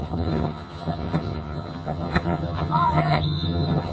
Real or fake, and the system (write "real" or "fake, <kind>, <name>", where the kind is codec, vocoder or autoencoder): fake, vocoder, HiFi-GAN